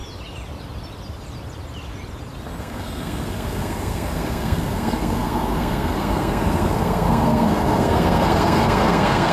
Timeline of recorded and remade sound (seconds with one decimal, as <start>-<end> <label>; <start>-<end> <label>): 0.0-2.6 recorded; 2.6-9.3 remade